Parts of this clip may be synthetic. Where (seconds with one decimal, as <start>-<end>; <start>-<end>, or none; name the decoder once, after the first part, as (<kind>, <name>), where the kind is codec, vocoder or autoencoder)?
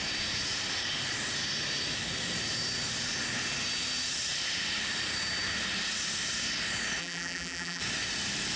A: 7.0-7.8 (vocoder, BigVGAN v2)